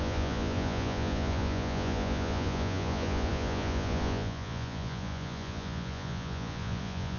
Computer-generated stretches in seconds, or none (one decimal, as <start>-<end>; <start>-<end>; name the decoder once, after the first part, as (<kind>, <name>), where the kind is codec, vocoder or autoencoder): 0.0-7.2 (vocoder, Vocos)